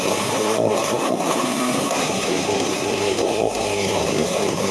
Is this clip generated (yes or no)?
yes